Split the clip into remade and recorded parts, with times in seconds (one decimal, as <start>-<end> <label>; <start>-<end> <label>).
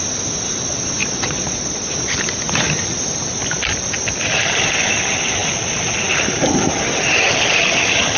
0.0-1.0 recorded; 1.0-1.9 remade; 1.9-8.2 recorded